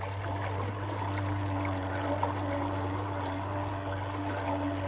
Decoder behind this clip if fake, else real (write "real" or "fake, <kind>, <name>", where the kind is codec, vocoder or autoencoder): real